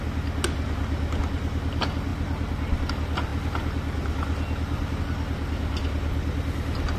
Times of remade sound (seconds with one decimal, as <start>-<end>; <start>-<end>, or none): none